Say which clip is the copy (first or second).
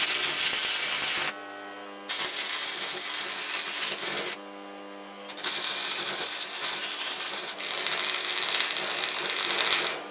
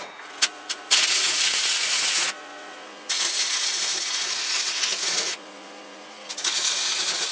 second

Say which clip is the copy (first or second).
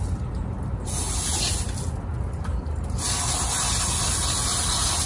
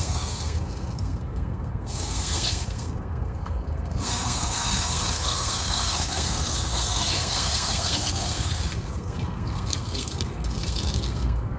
second